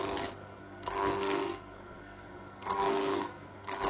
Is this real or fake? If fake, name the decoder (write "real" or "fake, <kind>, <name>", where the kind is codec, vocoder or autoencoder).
fake, codec, SNAC